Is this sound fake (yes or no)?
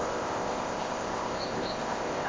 yes